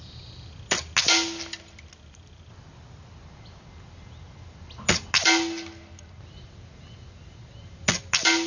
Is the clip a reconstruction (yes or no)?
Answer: no